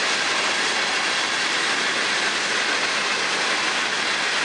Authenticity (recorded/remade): recorded